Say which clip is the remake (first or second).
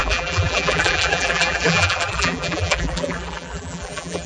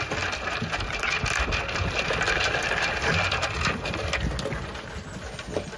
first